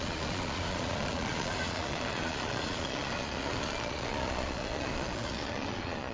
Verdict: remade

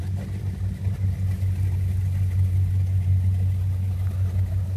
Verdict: recorded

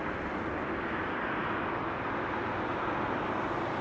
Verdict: recorded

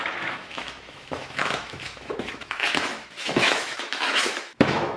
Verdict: remade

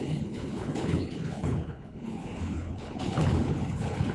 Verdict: remade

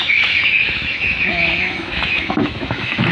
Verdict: remade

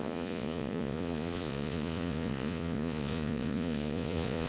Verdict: remade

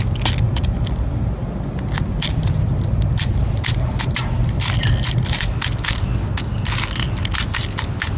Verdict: recorded